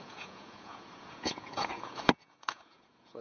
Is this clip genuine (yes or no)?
no